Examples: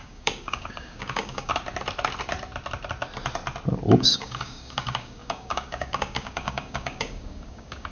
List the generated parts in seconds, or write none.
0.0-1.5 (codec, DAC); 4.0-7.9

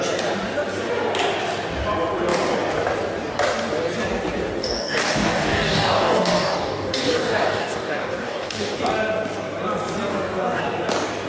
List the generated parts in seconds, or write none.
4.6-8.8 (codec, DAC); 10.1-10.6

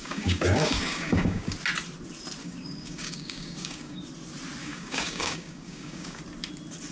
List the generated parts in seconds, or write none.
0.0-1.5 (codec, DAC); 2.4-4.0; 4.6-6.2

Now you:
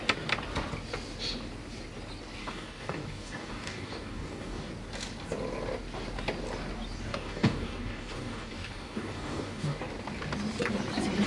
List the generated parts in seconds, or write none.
2.4-4.7 (codec, DAC); 7.1-9.8

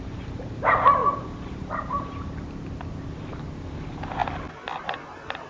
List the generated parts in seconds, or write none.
none